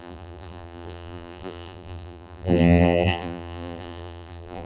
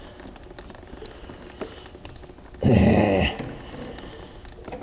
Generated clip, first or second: first